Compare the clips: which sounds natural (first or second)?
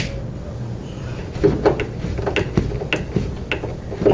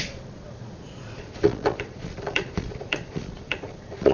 first